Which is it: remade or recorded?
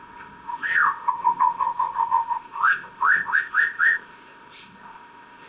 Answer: remade